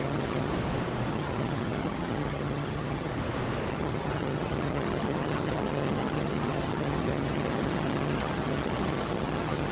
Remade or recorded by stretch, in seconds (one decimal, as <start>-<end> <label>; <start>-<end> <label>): 0.0-0.5 remade; 0.5-1.1 recorded; 1.1-3.1 remade; 3.1-3.7 recorded; 3.7-9.7 remade